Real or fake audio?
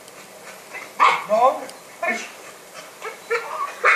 real